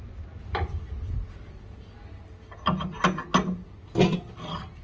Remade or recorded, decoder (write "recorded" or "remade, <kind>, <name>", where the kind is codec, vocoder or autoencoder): recorded